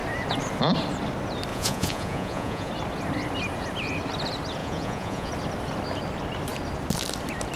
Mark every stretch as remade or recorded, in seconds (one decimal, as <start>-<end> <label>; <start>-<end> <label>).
0.0-1.5 recorded; 1.5-2.7 remade; 2.7-4.6 recorded; 4.6-5.3 remade; 5.3-7.6 recorded